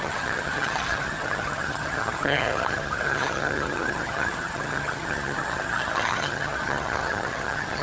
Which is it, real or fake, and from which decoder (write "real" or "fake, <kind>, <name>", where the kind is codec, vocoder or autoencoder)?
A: fake, vocoder, HiFi-GAN